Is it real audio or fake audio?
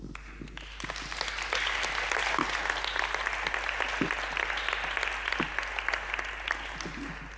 real